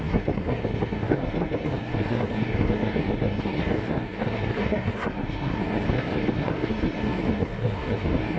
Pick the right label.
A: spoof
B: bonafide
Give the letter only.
A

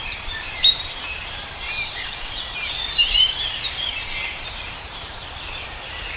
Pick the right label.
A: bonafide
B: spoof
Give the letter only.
B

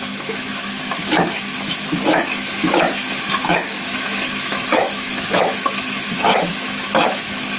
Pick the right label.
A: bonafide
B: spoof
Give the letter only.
B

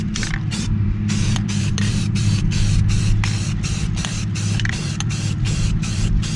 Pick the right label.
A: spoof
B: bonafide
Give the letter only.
A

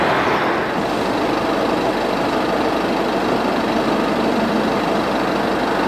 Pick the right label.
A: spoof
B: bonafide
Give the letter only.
B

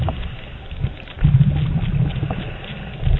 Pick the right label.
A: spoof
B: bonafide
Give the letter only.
B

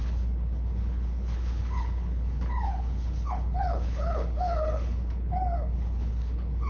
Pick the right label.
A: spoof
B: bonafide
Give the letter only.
A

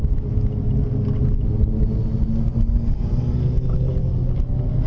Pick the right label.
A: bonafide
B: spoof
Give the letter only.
A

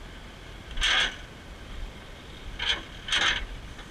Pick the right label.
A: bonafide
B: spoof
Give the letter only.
A